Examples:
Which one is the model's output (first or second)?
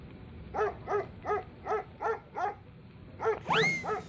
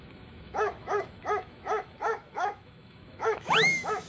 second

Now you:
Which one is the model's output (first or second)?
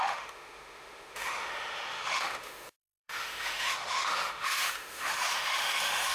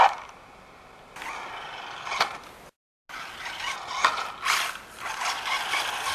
first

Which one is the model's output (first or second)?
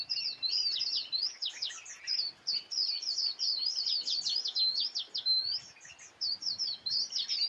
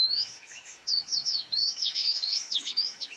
second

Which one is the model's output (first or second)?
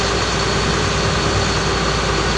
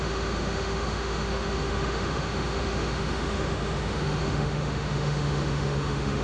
second